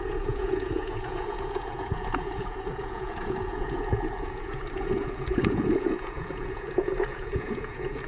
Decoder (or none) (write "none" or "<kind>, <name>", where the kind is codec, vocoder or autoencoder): vocoder, Vocos